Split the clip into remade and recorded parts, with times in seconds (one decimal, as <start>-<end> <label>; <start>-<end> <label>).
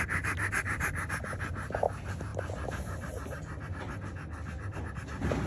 0.0-5.5 recorded